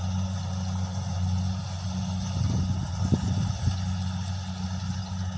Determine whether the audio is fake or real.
real